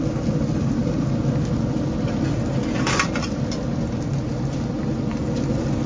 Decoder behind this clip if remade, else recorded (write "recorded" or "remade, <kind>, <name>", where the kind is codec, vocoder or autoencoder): recorded